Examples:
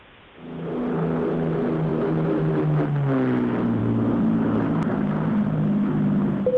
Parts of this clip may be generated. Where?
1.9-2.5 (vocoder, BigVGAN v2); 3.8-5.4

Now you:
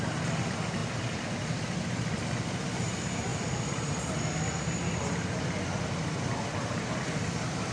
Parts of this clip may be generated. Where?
none

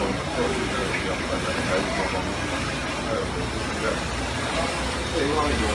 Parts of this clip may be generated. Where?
none

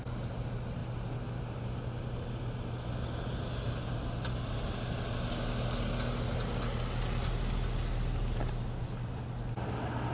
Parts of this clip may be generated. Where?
none

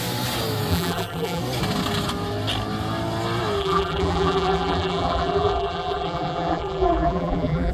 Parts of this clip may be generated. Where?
0.7-1.4 (vocoder, BigVGAN v2); 3.6-7.7

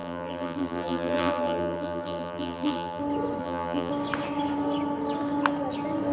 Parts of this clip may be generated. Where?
0.0-3.0 (vocoder, BigVGAN v2); 3.4-3.9

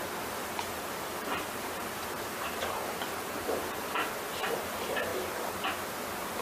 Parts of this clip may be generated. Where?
0.4-3.8 (vocoder, BigVGAN v2)

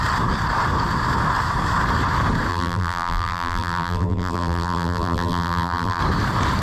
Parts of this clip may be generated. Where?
2.5-6.0 (vocoder, BigVGAN v2)